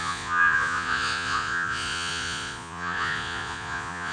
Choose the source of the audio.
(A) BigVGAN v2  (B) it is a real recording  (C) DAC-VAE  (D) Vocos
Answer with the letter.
D